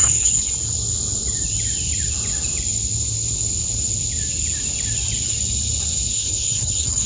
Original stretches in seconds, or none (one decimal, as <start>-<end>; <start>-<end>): 0.5-6.1